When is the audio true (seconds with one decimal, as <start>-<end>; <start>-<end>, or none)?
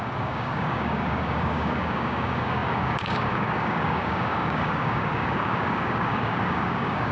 none